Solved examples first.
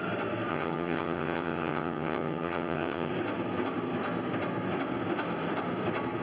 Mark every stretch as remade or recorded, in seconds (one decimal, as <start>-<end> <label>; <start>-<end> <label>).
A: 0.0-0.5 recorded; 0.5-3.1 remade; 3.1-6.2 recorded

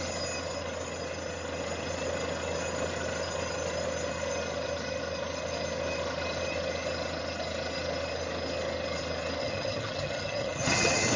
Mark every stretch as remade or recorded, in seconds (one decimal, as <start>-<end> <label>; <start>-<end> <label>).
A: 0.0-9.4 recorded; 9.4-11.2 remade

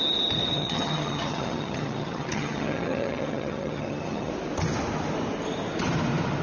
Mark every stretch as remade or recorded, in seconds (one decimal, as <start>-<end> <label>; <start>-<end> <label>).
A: 0.0-0.5 recorded; 0.5-4.3 remade; 4.3-6.4 recorded

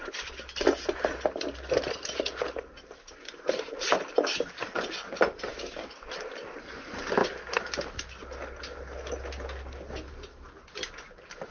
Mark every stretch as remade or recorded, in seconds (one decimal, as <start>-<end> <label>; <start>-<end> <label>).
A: 0.0-11.5 recorded